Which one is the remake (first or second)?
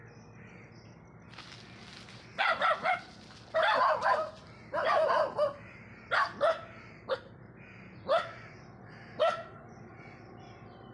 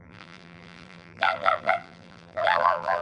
second